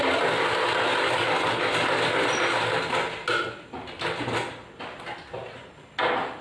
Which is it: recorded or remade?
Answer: recorded